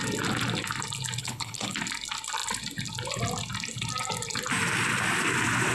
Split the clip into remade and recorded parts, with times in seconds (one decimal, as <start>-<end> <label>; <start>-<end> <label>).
0.0-1.2 recorded; 1.2-1.8 remade; 1.8-5.7 recorded